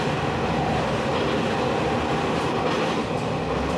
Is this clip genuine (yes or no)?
yes